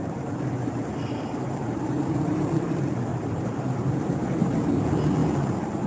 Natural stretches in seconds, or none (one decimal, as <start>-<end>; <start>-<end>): 2.4-3.1; 4.6-5.9